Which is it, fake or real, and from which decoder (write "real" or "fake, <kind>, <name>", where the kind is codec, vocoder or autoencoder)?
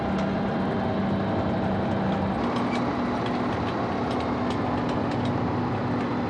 real